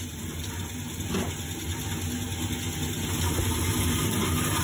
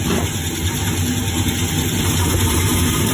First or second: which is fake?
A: second